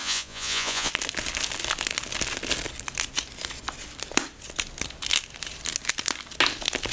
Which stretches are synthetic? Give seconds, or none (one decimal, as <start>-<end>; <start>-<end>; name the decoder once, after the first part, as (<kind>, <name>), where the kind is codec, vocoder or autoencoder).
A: 0.0-0.9 (vocoder, Vocos)